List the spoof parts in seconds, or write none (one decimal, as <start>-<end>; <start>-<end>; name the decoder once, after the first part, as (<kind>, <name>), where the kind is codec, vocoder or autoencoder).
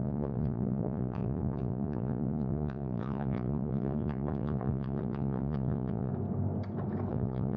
0.0-6.1 (vocoder, Vocos); 7.1-7.6